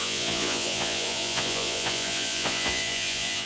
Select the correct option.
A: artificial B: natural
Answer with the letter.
A